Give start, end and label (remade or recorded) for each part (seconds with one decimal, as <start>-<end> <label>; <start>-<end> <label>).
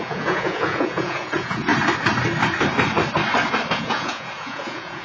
0.0-1.7 remade; 1.7-3.7 recorded; 3.7-5.0 remade